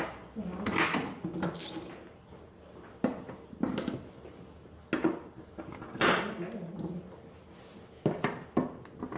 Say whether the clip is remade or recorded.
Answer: recorded